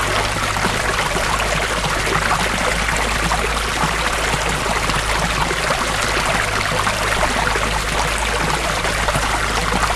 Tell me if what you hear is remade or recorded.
recorded